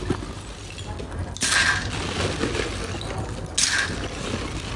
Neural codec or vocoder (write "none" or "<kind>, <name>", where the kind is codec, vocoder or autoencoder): none